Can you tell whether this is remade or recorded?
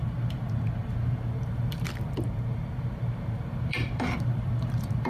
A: remade